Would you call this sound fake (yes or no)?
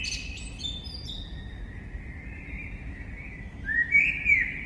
no